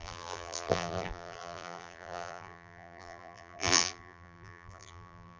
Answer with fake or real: fake